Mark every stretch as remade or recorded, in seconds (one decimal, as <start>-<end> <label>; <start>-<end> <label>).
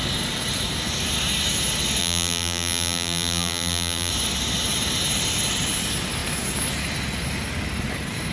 0.0-2.0 recorded; 2.0-4.1 remade; 4.1-8.3 recorded